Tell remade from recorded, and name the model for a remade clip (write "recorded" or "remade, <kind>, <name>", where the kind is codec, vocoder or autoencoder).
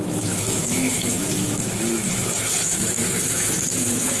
remade, autoencoder, DAC-VAE